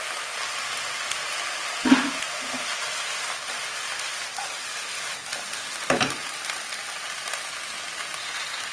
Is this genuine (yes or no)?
yes